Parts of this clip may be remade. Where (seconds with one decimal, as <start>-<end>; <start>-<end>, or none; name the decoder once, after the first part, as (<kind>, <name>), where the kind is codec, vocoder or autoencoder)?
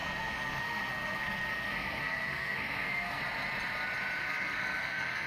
0.0-3.2 (codec, SNAC); 4.2-5.3